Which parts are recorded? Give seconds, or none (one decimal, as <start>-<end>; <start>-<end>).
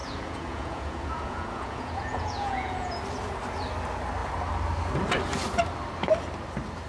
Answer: 3.0-6.9